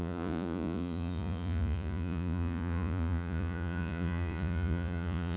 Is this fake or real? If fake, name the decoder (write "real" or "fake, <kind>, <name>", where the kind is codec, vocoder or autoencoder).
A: fake, vocoder, Vocos